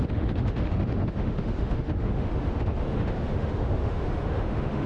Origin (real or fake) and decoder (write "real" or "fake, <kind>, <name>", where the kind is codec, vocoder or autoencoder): fake, autoencoder, DAC-VAE